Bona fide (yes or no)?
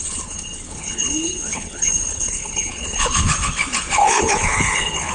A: no